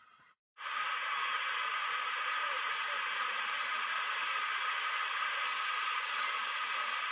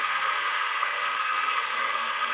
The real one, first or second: first